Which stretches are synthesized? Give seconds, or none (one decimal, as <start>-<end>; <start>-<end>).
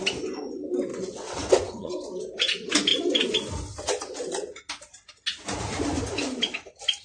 0.9-1.9